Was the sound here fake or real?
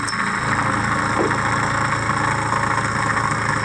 real